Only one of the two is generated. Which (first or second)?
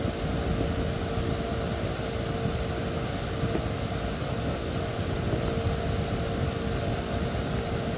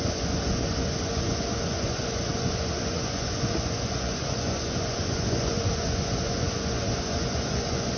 second